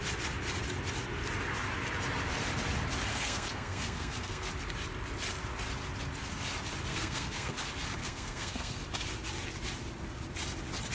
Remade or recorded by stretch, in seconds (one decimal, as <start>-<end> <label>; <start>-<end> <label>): 0.0-3.1 recorded; 3.1-4.5 remade; 4.5-6.9 recorded; 6.9-7.5 remade; 7.5-8.0 recorded; 8.0-8.8 remade; 8.8-10.9 recorded